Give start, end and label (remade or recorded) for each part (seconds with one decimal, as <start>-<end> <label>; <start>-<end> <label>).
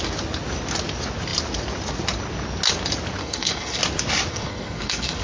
0.0-3.2 recorded; 3.2-3.8 remade; 3.8-4.3 recorded; 4.3-5.2 remade